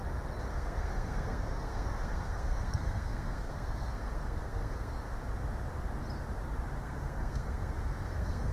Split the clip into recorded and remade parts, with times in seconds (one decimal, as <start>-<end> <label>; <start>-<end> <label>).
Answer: 0.0-0.5 recorded; 0.5-4.9 remade; 4.9-6.8 recorded; 6.8-8.5 remade